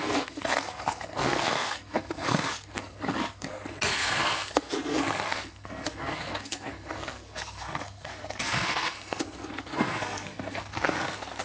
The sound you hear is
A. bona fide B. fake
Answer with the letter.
B